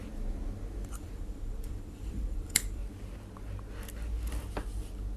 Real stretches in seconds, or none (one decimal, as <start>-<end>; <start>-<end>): 0.0-0.9; 2.8-5.2